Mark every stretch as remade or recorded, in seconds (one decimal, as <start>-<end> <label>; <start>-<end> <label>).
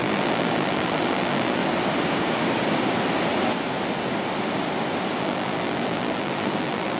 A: 0.0-1.6 remade; 1.6-5.2 recorded; 5.2-7.0 remade